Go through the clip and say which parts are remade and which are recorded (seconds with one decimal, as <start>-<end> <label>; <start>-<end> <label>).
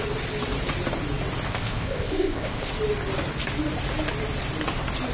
0.0-1.5 recorded; 1.5-2.7 remade; 2.7-5.1 recorded